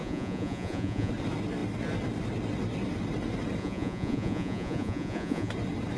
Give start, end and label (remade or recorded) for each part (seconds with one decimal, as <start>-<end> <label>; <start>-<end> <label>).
0.0-1.1 remade; 1.1-3.6 recorded; 3.6-5.5 remade; 5.5-6.0 recorded